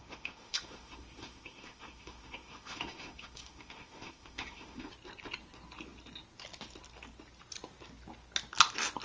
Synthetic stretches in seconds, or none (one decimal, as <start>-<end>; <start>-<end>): 0.0-4.9